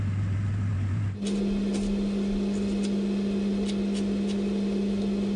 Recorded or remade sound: recorded